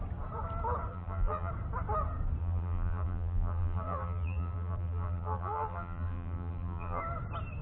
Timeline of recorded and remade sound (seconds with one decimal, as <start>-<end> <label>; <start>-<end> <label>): 0.0-0.9 recorded; 0.9-1.5 remade; 1.5-2.4 recorded; 2.4-7.0 remade; 7.0-7.6 recorded